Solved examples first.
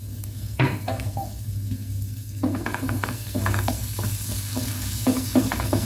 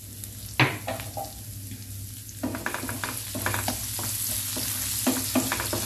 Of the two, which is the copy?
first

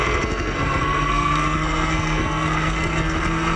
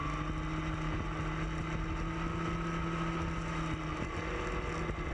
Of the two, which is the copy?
first